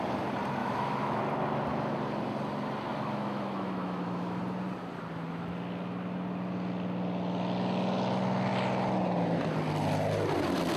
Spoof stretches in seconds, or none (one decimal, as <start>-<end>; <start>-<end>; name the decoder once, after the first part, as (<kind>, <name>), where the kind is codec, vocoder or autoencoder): 0.6-1.2 (autoencoder, DAC-VAE); 2.9-4.4